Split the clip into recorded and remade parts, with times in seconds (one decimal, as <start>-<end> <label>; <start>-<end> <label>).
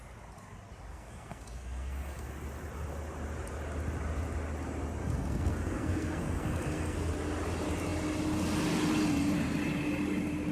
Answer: 0.0-0.9 recorded; 0.9-2.3 remade; 2.3-5.0 recorded; 5.0-7.1 remade; 7.1-10.5 recorded